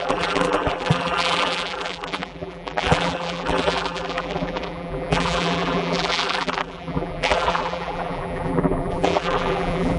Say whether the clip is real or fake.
fake